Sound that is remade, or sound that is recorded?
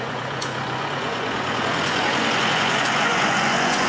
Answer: remade